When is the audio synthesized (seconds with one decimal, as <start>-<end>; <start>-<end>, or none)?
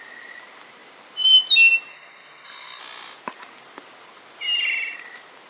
1.9-2.8